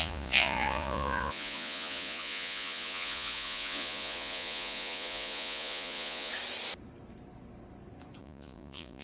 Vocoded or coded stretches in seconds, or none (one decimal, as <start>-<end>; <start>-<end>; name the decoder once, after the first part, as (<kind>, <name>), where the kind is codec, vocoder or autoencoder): 0.0-6.3 (vocoder, Vocos); 8.2-9.0